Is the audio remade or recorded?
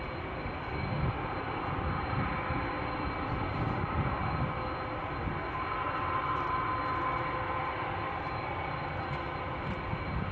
recorded